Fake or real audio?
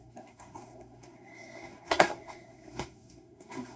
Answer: fake